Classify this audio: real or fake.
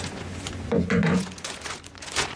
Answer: fake